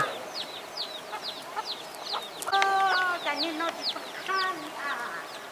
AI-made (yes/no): no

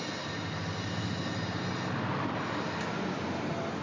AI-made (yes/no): no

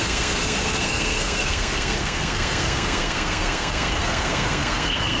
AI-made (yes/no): yes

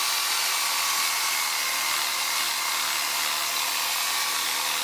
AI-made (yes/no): no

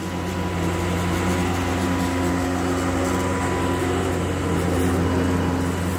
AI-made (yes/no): no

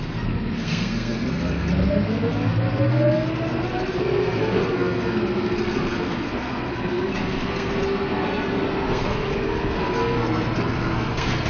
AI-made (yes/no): yes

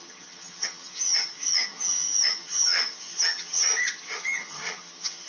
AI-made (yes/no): yes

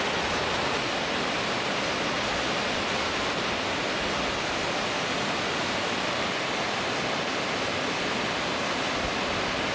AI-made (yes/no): no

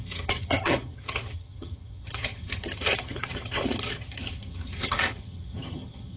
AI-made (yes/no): yes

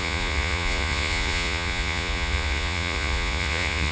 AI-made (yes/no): yes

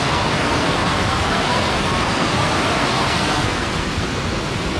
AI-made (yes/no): yes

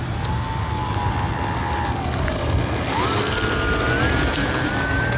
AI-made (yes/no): no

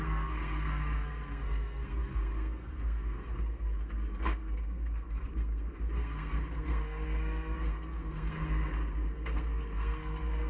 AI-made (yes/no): yes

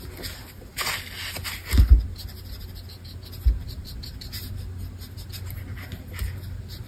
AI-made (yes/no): no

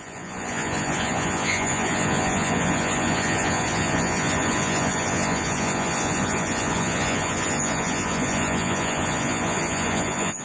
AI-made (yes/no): yes